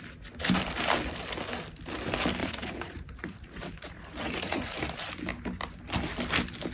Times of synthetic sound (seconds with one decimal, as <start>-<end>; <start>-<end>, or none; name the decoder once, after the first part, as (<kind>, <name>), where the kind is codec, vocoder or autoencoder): 2.4-4.8 (vocoder, Vocos)